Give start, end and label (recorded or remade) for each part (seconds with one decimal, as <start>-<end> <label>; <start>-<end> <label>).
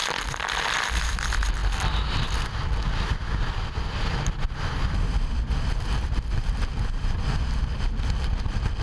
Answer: 0.0-1.0 recorded; 1.0-1.6 remade; 1.6-3.1 recorded; 3.1-8.8 remade